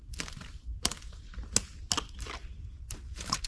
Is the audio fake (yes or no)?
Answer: no